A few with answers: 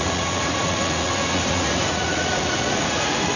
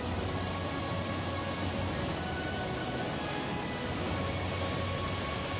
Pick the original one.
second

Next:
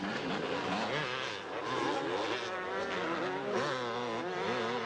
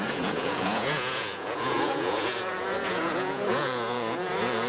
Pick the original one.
first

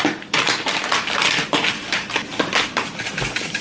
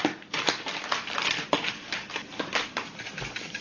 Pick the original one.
first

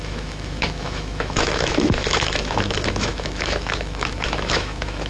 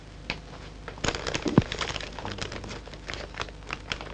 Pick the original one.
second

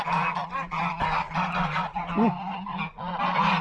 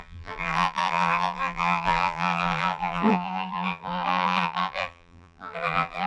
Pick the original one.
first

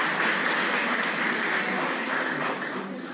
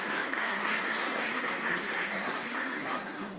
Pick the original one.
first